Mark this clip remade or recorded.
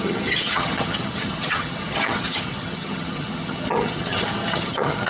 remade